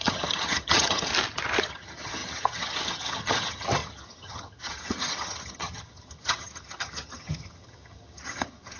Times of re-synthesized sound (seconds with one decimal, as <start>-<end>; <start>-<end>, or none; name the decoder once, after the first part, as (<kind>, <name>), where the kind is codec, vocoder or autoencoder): 0.0-1.1 (vocoder, HiFi-GAN); 1.6-8.8

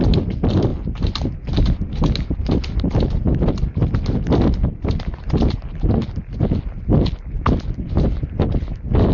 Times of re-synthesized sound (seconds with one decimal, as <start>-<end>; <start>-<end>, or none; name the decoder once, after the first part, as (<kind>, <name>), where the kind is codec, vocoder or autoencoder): none

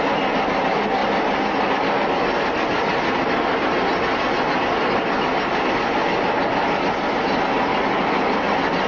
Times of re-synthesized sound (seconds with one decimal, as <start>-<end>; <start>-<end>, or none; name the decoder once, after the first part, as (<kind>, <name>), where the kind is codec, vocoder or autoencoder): none

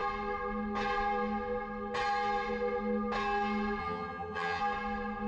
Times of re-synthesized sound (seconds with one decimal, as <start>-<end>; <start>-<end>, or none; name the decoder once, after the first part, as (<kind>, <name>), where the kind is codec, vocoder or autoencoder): 3.8-4.6 (vocoder, HiFi-GAN)